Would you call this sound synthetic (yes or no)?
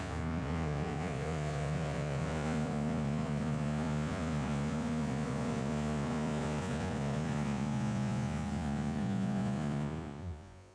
yes